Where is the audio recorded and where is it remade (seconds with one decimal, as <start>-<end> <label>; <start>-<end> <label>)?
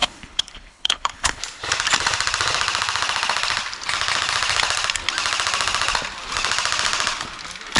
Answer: 0.0-1.4 remade; 1.4-7.8 recorded